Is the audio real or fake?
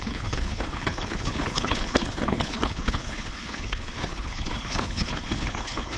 fake